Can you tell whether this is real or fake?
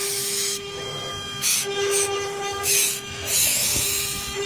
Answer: fake